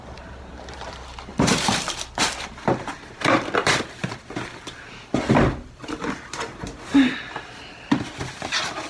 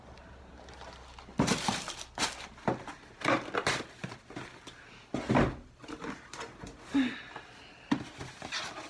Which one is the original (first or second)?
second